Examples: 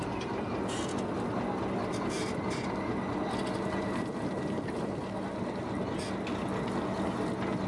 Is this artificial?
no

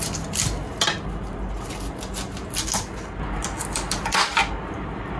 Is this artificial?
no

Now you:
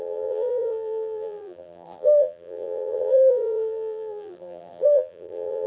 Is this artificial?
yes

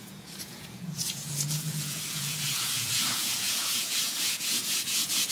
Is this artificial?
yes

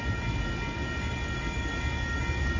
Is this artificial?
no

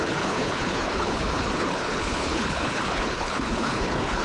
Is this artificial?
yes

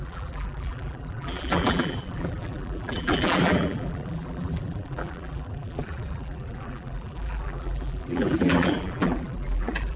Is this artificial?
yes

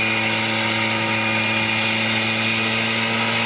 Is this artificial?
no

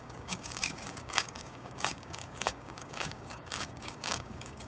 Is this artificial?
yes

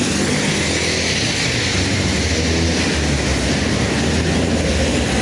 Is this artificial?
no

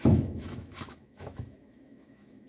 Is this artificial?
yes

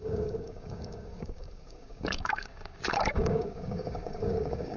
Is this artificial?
yes